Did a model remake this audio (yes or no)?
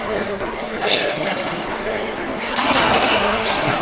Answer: yes